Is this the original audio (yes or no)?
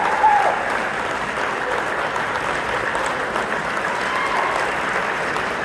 yes